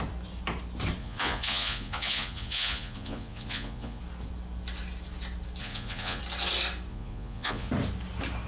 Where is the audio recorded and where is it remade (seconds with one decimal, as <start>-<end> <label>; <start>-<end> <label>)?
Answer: 0.0-1.0 recorded; 1.0-4.0 remade; 4.0-5.6 recorded; 5.6-6.2 remade; 6.2-6.9 recorded; 6.9-7.7 remade; 7.7-8.5 recorded